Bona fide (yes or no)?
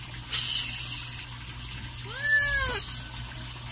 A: yes